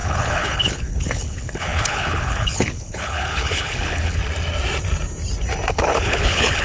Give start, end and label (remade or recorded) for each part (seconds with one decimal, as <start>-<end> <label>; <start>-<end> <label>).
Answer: 0.0-4.2 remade; 4.2-5.7 recorded; 5.7-6.6 remade